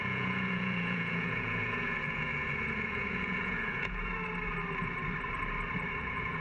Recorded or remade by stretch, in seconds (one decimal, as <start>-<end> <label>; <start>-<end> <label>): 0.0-4.1 remade; 4.1-6.0 recorded; 6.0-6.4 remade

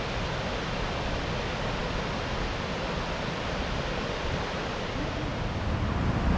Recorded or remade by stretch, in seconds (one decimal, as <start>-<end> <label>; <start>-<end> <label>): 0.0-6.4 recorded

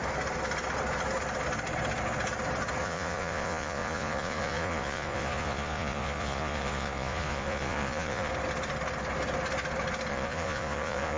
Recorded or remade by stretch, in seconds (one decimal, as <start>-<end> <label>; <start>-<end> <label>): 0.0-2.8 recorded; 2.8-8.3 remade; 8.3-10.1 recorded; 10.1-11.2 remade

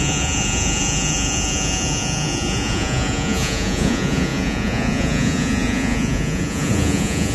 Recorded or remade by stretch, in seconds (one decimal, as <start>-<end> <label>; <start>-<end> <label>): 0.0-7.3 remade

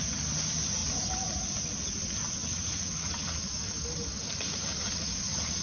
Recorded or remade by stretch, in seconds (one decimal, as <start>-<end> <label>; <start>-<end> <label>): 0.0-2.4 recorded; 2.4-3.4 remade; 3.4-5.6 recorded

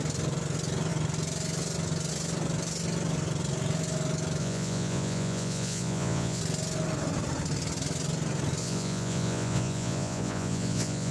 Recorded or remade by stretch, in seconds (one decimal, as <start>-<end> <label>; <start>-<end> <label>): 0.0-4.4 recorded; 4.4-6.4 remade; 6.4-8.6 recorded; 8.6-11.1 remade

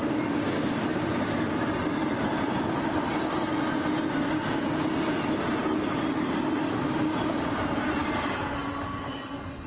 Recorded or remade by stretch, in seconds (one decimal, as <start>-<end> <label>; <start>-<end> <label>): 0.0-9.7 recorded

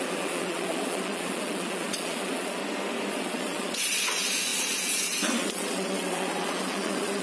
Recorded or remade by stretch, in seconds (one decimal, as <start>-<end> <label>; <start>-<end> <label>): 0.0-2.6 remade; 2.6-3.1 recorded; 3.1-7.2 remade